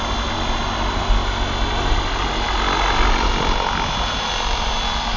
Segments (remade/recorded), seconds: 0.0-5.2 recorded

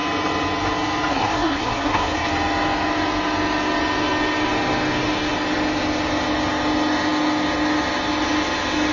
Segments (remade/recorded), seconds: 0.0-1.1 recorded; 1.1-2.3 remade; 2.3-8.9 recorded

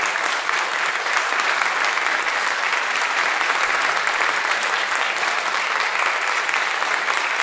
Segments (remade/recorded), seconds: 0.0-0.7 recorded; 0.7-1.5 remade; 1.5-2.7 recorded; 2.7-5.6 remade; 5.6-7.4 recorded

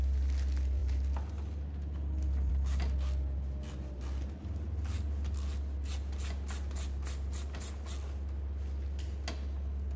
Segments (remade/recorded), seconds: 0.0-10.0 recorded

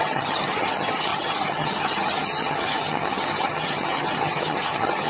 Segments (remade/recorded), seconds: 0.0-5.1 remade

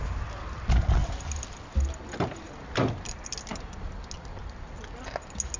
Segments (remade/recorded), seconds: 0.0-5.6 recorded

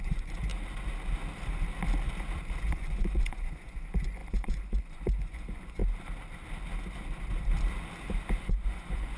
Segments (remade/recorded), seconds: 0.0-0.5 remade; 0.5-2.6 recorded; 2.6-5.8 remade; 5.8-8.4 recorded; 8.4-9.2 remade